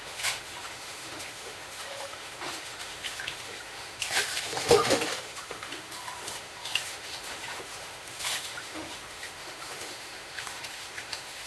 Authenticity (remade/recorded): remade